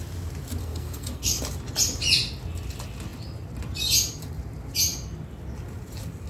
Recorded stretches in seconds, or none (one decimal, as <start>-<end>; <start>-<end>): 0.0-0.6; 1.4-6.3